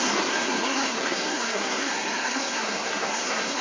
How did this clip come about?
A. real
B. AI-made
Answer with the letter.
B